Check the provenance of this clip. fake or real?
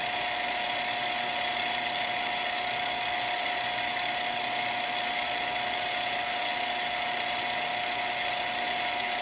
real